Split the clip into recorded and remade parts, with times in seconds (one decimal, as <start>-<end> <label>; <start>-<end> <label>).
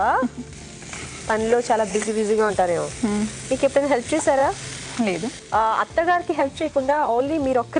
0.0-1.9 recorded; 1.9-2.5 remade; 2.5-6.4 recorded; 6.4-7.2 remade; 7.2-7.8 recorded